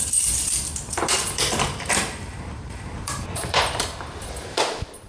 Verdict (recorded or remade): remade